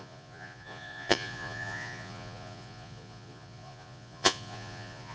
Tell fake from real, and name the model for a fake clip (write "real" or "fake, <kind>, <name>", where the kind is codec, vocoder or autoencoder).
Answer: fake, vocoder, Vocos